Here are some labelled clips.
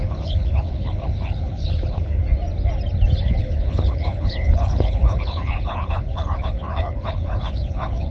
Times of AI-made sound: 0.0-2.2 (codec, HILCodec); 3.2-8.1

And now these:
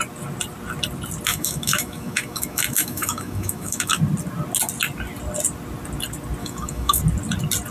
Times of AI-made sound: 1.3-4.0 (autoencoder, DAC-VAE); 6.4-7.0

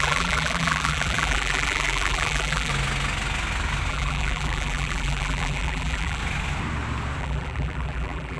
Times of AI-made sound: 0.0-2.7 (vocoder, BigVGAN v2); 3.9-6.2; 7.2-8.4

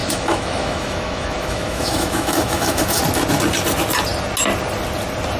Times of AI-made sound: 0.0-3.0 (autoencoder, DAC-VAE)

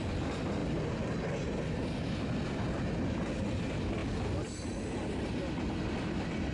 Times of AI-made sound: none

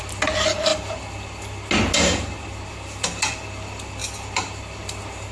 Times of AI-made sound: none